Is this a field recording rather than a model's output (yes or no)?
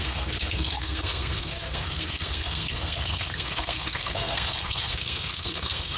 no